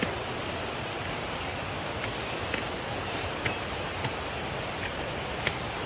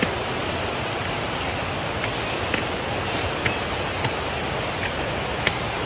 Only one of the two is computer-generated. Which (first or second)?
first